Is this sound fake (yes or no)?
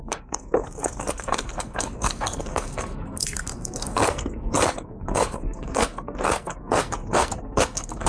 yes